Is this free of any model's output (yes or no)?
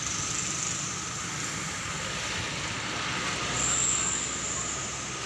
yes